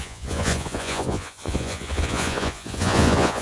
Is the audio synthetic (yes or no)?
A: yes